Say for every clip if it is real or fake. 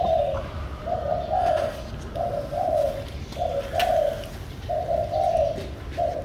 real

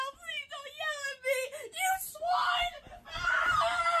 real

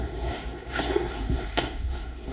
fake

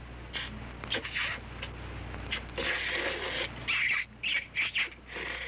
real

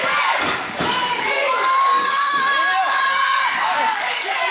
fake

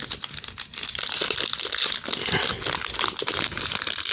real